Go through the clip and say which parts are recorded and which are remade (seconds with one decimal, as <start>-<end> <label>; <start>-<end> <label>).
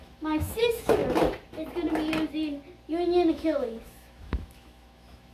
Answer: 0.0-1.0 remade; 1.0-3.3 recorded; 3.3-5.3 remade